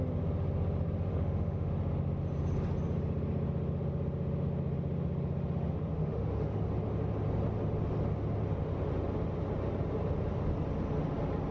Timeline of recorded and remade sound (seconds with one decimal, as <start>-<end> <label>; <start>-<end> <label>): 0.0-1.1 recorded; 1.1-1.7 remade; 1.7-6.0 recorded; 6.0-6.6 remade; 6.6-11.5 recorded